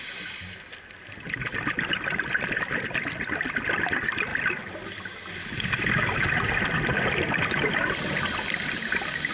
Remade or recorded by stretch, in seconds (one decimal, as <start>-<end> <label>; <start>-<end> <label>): 0.0-9.3 recorded